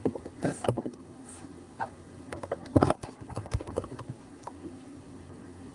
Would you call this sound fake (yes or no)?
yes